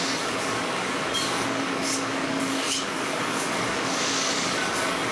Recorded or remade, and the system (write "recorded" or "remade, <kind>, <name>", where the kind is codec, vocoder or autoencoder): remade, codec, DAC